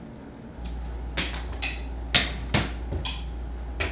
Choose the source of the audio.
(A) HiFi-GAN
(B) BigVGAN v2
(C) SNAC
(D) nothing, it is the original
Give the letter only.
D